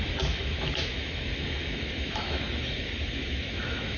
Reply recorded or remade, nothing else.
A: remade